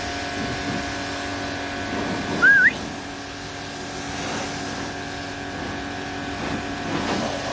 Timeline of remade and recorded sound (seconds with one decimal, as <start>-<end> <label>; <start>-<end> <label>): 0.0-7.5 recorded